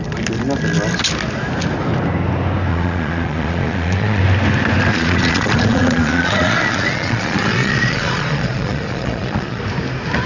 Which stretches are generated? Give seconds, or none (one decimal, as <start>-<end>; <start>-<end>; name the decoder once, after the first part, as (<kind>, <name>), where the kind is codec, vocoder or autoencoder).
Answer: 2.7-4.2 (vocoder, Vocos); 4.9-9.6